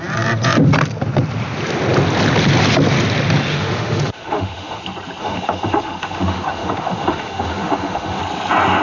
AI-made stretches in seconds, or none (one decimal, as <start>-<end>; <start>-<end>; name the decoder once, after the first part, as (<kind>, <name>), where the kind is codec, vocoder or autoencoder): 3.5-4.8 (autoencoder, DAC-VAE); 5.2-8.2